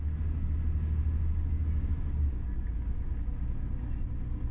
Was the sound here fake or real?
real